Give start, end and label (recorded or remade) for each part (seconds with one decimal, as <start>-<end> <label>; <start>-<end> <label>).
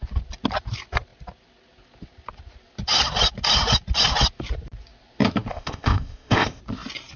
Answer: 0.0-5.5 recorded; 5.5-6.6 remade; 6.6-7.2 recorded